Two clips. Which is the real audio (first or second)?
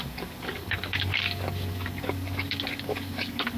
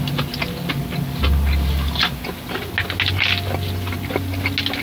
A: second